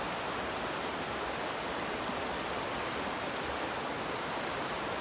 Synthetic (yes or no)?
no